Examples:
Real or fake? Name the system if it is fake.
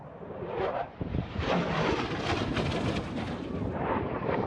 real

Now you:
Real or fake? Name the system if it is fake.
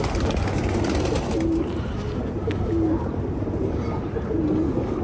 real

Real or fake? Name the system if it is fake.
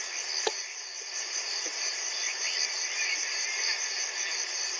real